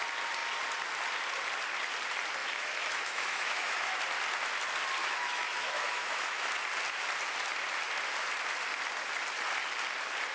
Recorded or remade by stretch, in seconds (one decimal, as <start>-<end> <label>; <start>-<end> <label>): 0.0-2.4 recorded; 2.4-4.0 remade; 4.0-5.0 recorded; 5.0-6.5 remade; 6.5-10.3 recorded